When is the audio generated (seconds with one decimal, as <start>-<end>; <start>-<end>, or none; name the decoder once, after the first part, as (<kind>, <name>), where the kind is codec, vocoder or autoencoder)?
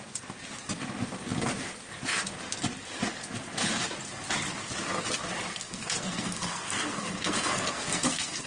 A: 5.5-8.5 (codec, SNAC)